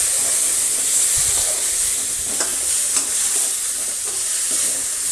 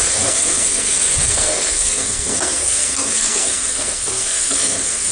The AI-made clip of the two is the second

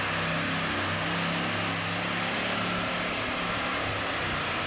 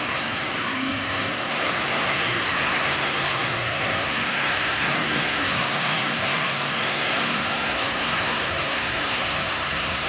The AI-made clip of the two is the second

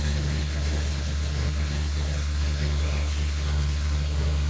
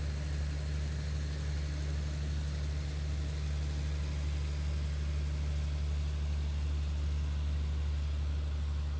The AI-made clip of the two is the first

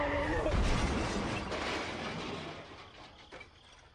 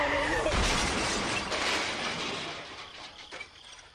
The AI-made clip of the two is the second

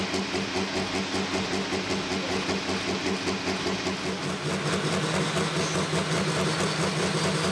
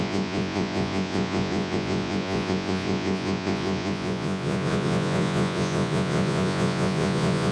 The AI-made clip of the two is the second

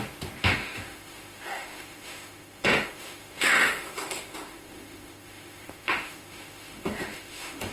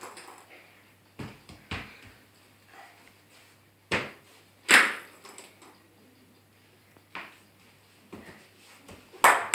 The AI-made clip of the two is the first